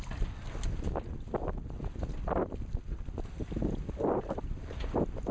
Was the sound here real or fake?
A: real